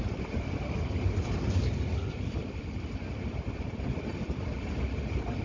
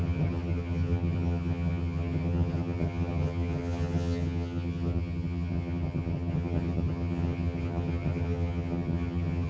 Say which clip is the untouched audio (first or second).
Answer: first